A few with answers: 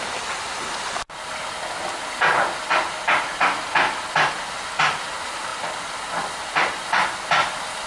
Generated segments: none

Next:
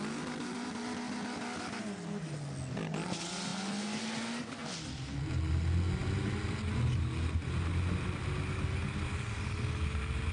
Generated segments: none

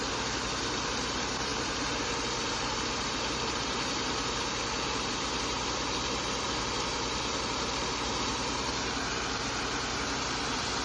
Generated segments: 0.0-10.8 (vocoder, BigVGAN v2)

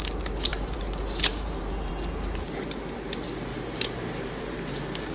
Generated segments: 0.5-1.9 (vocoder, BigVGAN v2); 3.5-4.4

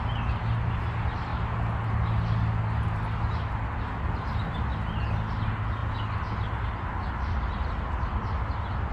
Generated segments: none

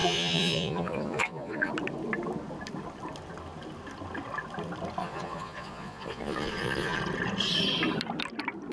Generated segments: 0.0-1.7 (vocoder, Vocos); 5.0-7.0

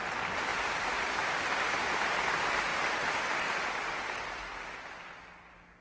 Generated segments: none

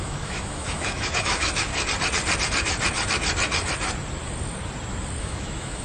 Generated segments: 0.0-1.7 (autoencoder, DAC-VAE); 5.2-5.8